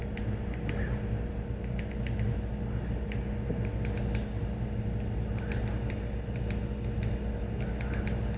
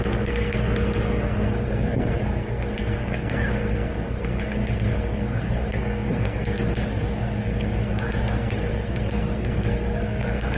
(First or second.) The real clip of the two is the first